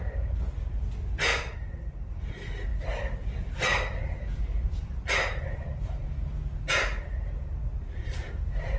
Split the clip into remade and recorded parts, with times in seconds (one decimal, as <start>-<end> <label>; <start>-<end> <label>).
0.0-8.8 recorded